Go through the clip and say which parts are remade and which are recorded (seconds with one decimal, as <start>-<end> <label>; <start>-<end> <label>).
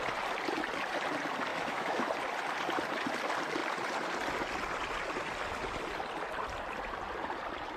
0.0-1.5 recorded; 1.5-2.1 remade; 2.1-7.8 recorded